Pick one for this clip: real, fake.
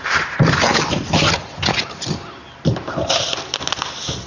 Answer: real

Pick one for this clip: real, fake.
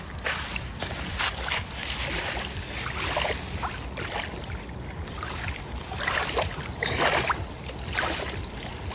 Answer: fake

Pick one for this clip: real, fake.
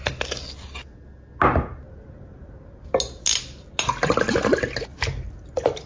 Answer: real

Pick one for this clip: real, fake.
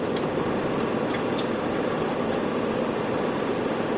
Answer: real